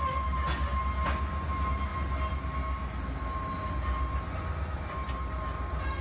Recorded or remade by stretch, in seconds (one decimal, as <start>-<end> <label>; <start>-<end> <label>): 0.0-6.0 recorded